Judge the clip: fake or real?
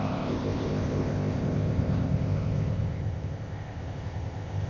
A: fake